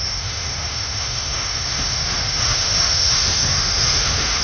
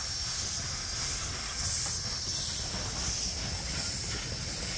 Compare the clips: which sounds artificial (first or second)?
first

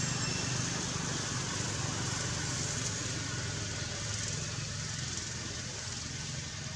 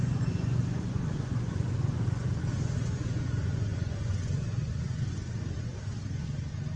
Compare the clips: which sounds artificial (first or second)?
second